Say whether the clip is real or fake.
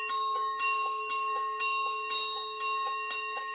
fake